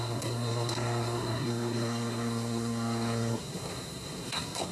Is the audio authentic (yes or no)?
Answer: no